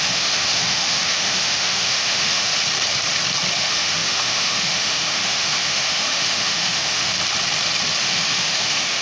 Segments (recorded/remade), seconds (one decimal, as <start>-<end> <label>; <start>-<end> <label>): 0.0-2.5 remade; 2.5-3.6 recorded; 3.6-7.1 remade; 7.1-8.0 recorded; 8.0-9.0 remade